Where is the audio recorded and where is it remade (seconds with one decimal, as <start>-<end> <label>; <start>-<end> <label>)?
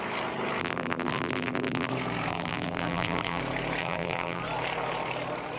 0.0-0.6 recorded; 0.6-1.9 remade; 1.9-2.3 recorded; 2.3-3.4 remade; 3.4-3.8 recorded; 3.8-4.4 remade; 4.4-5.6 recorded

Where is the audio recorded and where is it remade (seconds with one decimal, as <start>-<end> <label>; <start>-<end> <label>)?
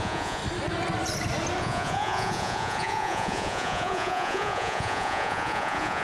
0.0-0.4 remade; 0.4-1.6 recorded; 1.6-6.0 remade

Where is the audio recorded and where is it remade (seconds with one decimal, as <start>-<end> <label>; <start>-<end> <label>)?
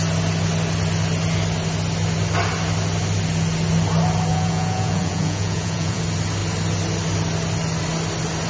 0.0-4.3 recorded; 4.3-6.0 remade; 6.0-8.5 recorded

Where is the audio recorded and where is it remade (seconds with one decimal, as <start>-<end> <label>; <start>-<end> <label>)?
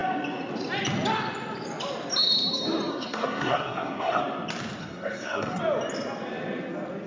0.0-2.9 recorded; 2.9-4.2 remade; 4.2-4.8 recorded; 4.8-5.6 remade; 5.6-7.1 recorded